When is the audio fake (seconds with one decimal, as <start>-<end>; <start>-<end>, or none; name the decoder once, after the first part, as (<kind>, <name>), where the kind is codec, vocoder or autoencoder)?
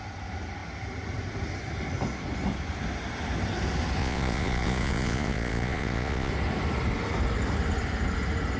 4.0-6.3 (vocoder, Vocos)